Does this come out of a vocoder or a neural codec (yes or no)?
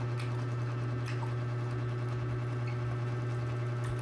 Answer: no